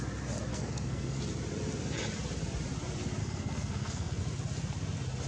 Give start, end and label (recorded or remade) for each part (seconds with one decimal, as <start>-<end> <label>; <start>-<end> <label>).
0.0-0.5 recorded; 0.5-1.2 remade; 1.2-3.2 recorded; 3.2-4.2 remade; 4.2-5.3 recorded